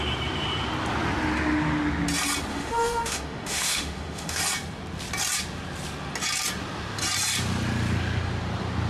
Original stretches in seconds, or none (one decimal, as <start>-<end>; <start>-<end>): 0.0-2.5; 4.4-8.9